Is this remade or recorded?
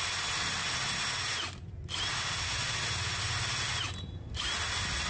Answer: recorded